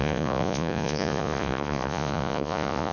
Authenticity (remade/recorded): remade